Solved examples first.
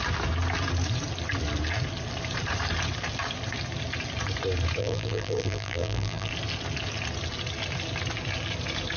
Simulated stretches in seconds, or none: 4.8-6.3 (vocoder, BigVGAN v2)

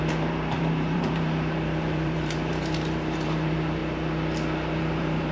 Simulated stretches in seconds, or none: 0.0-3.8 (vocoder, BigVGAN v2); 4.8-5.3

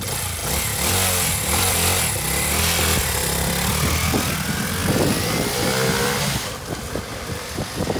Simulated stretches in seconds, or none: 0.4-2.5 (vocoder, BigVGAN v2); 4.8-7.6